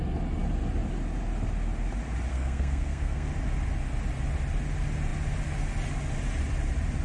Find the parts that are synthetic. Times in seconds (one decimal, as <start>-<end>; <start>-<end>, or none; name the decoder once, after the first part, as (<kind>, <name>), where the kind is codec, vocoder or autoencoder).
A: 2.3-3.3 (codec, SNAC)